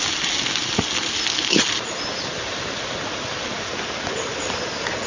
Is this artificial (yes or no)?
no